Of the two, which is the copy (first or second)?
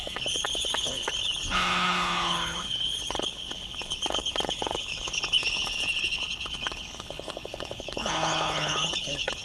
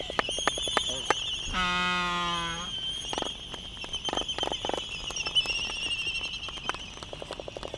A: first